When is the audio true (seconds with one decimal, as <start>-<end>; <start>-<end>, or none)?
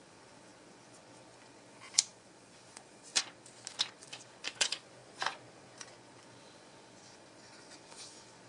3.1-3.9